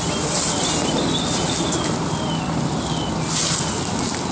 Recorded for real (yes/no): yes